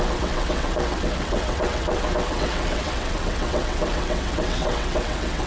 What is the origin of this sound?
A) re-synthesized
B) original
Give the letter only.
A